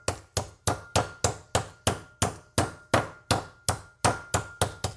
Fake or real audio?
real